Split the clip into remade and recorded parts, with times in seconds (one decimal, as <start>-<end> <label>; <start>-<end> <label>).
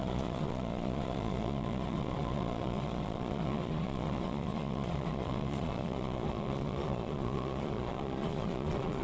0.0-9.0 remade